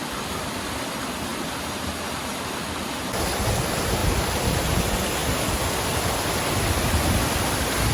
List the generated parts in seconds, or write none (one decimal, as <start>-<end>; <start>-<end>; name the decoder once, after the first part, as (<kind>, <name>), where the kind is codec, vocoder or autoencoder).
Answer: 4.0-4.8 (vocoder, BigVGAN v2)